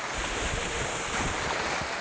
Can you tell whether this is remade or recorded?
recorded